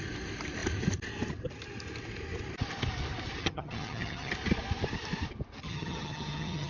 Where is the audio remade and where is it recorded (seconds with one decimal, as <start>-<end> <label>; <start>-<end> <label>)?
0.0-3.4 recorded; 3.4-4.3 remade; 4.3-5.6 recorded; 5.6-6.7 remade